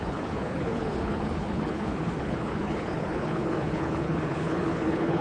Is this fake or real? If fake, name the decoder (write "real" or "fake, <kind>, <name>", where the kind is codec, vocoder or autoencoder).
fake, codec, HILCodec